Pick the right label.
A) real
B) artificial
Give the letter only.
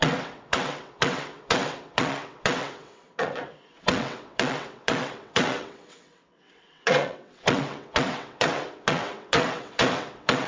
B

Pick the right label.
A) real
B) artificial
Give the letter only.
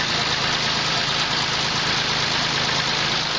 A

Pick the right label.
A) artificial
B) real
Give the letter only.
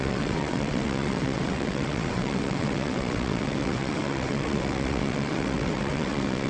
A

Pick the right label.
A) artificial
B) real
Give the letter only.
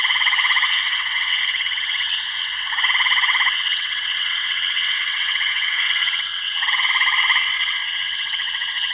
A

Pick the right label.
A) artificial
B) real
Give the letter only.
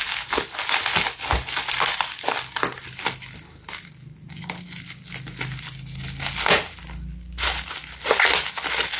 B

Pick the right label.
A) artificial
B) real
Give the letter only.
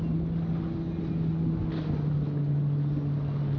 B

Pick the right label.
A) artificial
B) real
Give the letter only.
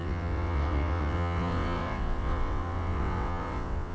A